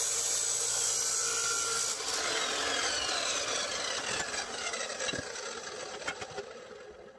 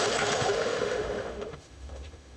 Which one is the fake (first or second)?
second